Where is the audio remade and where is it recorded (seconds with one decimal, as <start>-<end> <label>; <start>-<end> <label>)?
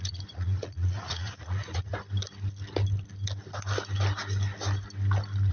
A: 0.0-1.9 remade; 1.9-5.5 recorded